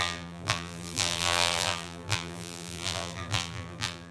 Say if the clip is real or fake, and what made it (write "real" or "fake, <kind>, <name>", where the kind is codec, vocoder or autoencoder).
fake, vocoder, BigVGAN v2